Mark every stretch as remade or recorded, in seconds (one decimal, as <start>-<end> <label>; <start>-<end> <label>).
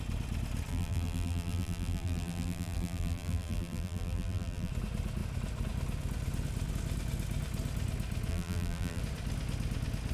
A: 0.0-0.7 recorded; 0.7-4.7 remade; 4.7-8.3 recorded; 8.3-9.0 remade; 9.0-10.1 recorded